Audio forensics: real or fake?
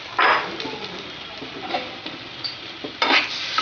fake